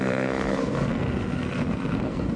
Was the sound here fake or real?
fake